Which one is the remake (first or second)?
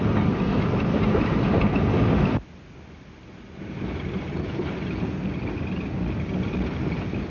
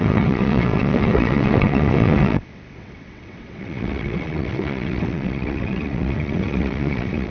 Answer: second